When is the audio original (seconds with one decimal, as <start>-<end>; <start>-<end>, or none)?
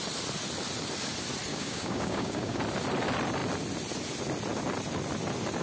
0.0-1.5; 2.6-5.6